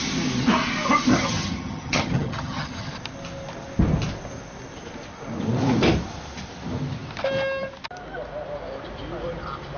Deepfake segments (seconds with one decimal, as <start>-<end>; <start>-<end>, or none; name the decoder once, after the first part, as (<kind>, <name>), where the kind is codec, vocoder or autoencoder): 1.1-2.9 (vocoder, HiFi-GAN)